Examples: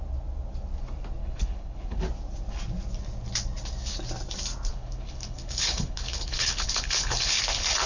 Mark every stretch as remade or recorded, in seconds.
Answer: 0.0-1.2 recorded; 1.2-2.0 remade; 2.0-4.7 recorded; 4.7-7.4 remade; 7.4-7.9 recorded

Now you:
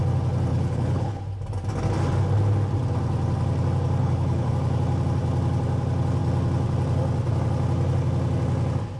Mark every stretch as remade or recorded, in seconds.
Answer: 0.0-0.5 recorded; 0.5-1.2 remade; 1.2-4.0 recorded; 4.0-4.5 remade; 4.5-9.0 recorded